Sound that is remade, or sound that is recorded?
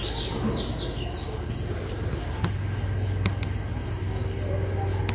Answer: recorded